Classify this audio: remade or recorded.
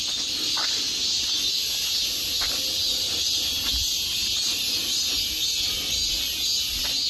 recorded